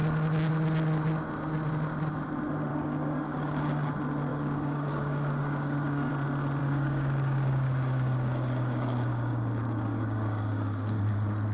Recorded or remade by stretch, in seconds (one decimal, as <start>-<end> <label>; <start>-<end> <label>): 0.0-2.7 recorded; 2.7-3.9 remade; 3.9-4.3 recorded; 4.3-6.1 remade; 6.1-6.6 recorded; 6.6-11.0 remade; 11.0-11.5 recorded